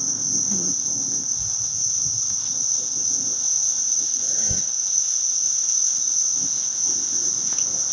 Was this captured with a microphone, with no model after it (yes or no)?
no